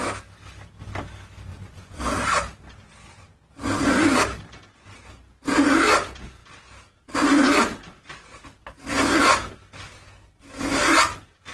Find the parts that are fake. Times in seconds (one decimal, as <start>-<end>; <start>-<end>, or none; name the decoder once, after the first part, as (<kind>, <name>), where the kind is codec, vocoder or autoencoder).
1.5-2.0 (vocoder, Vocos)